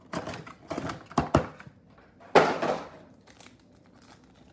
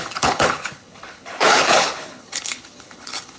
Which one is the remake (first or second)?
second